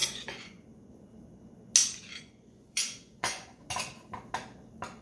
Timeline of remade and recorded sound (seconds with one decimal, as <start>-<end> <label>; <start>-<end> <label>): 0.0-0.9 remade; 0.9-1.8 recorded; 1.8-3.6 remade; 3.6-5.0 recorded